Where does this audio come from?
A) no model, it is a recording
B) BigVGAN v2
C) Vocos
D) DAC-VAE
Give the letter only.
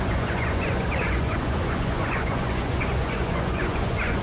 C